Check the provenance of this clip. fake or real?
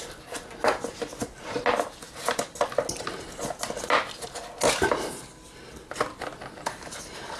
real